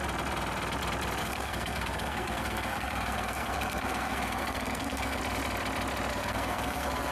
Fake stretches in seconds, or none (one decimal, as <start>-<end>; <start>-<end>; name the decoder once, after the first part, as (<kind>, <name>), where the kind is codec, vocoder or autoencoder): 1.2-5.2 (codec, SNAC); 6.1-7.1